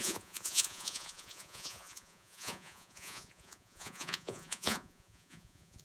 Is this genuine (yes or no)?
no